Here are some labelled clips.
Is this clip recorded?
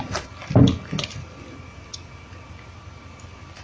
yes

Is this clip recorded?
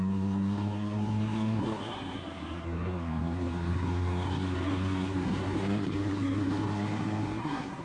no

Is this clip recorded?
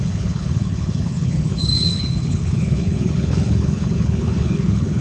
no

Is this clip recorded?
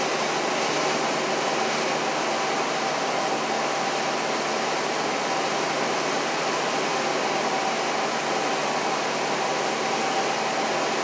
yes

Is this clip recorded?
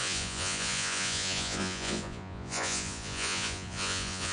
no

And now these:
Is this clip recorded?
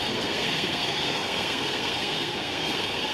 no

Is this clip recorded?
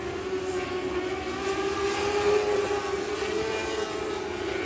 yes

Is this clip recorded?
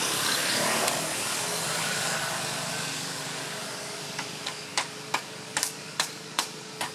no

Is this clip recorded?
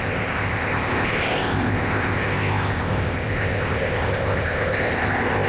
no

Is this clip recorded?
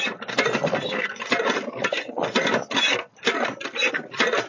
yes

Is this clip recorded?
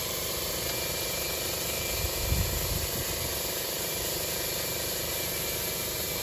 no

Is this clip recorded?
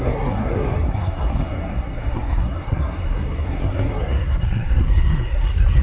no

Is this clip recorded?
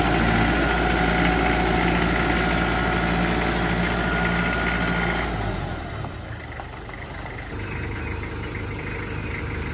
yes